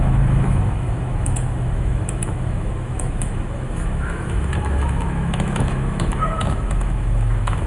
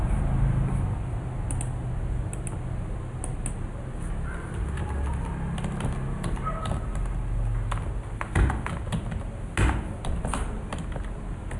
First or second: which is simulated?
first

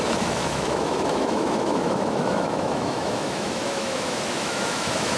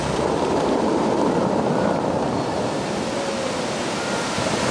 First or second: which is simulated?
first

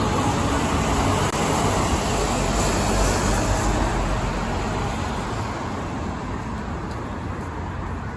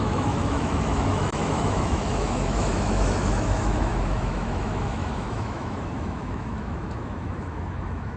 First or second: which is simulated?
second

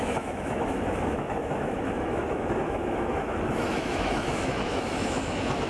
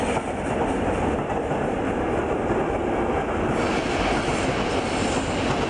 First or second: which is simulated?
first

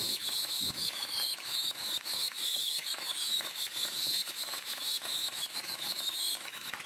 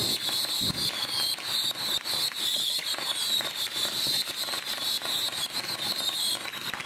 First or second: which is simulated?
first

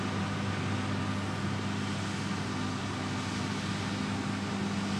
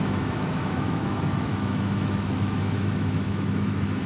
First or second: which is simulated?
second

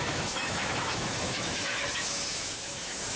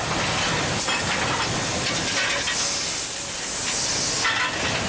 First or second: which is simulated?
first